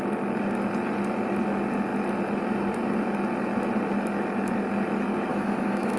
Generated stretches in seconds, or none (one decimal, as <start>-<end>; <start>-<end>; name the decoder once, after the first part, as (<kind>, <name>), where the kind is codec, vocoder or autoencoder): 5.3-6.0 (autoencoder, DAC-VAE)